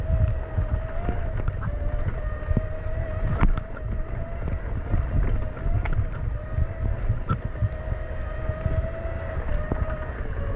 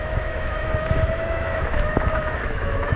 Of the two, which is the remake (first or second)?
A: second